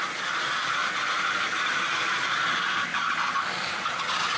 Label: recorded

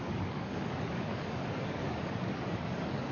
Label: remade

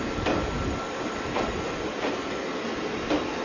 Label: recorded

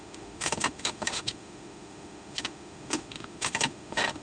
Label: remade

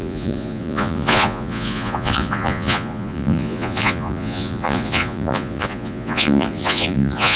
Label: remade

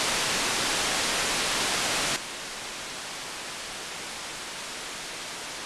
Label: recorded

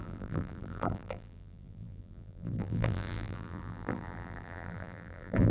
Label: remade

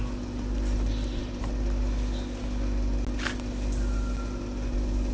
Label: recorded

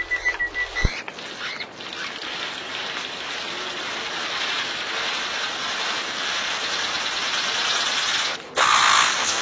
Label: recorded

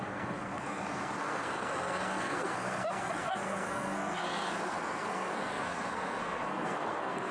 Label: remade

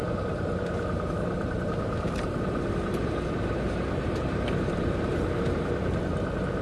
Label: remade